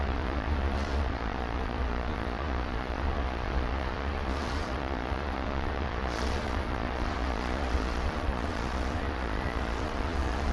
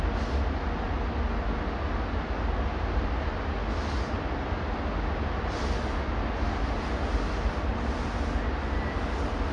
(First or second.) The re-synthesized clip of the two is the first